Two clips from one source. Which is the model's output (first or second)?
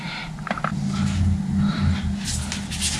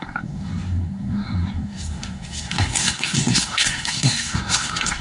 second